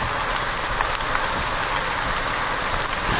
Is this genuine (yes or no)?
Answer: yes